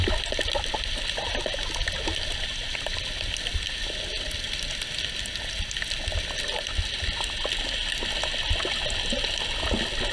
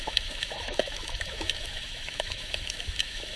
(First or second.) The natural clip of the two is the first